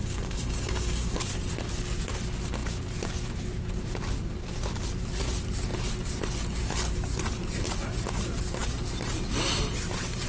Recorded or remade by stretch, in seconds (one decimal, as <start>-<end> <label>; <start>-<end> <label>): 0.0-1.2 remade; 1.2-10.3 recorded